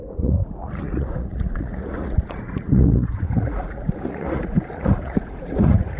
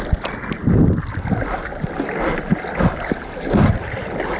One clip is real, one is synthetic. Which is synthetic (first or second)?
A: first